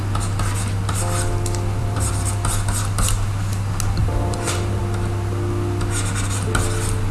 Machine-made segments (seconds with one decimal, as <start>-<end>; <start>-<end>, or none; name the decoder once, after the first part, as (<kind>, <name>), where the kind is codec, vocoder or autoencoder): 1.8-2.3 (vocoder, BigVGAN v2); 4.0-4.8